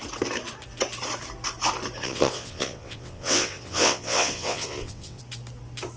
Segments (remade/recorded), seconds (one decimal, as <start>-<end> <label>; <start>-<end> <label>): 0.0-2.0 recorded; 2.0-5.2 remade; 5.2-6.0 recorded